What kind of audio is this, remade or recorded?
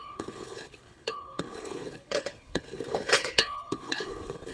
remade